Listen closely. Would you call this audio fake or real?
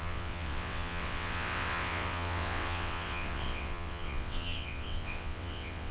fake